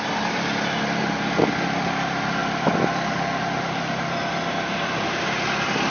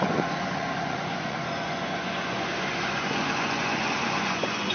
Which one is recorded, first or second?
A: first